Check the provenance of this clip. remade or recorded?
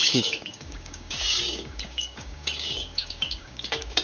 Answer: remade